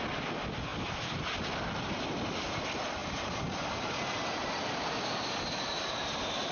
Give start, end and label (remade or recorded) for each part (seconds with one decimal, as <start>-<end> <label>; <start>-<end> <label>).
0.0-6.5 recorded